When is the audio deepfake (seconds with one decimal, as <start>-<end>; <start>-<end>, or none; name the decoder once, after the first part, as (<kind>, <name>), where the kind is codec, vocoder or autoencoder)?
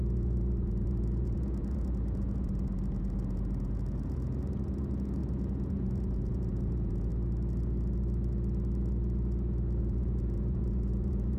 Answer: 0.0-7.1 (vocoder, Vocos); 9.8-11.4